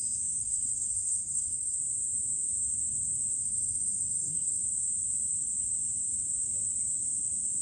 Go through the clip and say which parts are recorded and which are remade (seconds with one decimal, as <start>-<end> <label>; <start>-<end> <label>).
0.0-0.4 recorded; 0.4-1.8 remade; 1.8-3.4 recorded; 3.4-4.6 remade; 4.6-7.6 recorded